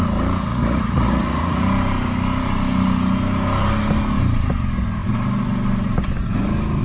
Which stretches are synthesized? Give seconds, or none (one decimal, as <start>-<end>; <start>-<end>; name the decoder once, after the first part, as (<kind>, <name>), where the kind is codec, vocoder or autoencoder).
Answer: 0.5-1.6 (vocoder, Vocos)

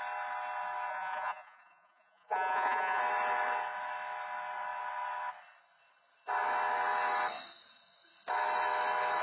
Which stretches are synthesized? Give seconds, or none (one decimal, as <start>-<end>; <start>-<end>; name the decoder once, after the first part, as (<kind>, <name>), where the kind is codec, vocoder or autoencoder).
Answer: 0.9-3.0 (vocoder, Vocos)

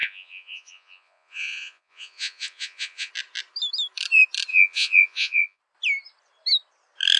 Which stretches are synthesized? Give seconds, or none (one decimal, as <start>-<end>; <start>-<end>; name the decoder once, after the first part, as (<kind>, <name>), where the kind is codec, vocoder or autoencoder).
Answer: 0.0-3.1 (vocoder, Vocos); 4.5-5.6

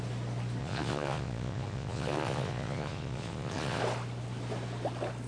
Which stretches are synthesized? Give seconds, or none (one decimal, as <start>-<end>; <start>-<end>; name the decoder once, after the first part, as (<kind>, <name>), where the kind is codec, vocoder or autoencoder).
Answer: 0.6-3.8 (vocoder, Vocos)